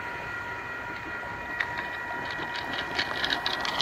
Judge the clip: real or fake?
fake